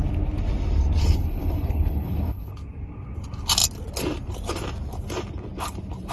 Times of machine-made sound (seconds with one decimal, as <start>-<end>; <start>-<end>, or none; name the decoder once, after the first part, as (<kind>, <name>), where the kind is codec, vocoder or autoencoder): 1.0-2.5 (codec, HILCodec)